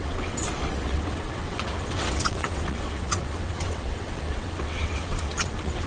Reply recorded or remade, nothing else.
remade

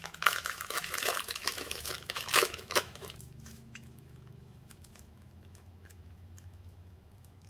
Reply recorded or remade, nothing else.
remade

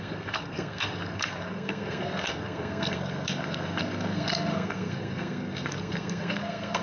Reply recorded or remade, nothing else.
remade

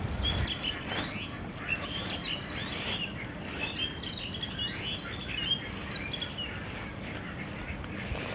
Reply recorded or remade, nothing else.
recorded